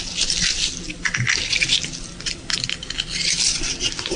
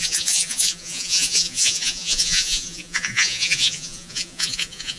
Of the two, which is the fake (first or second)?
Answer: second